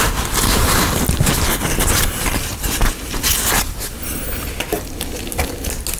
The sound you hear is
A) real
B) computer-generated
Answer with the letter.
A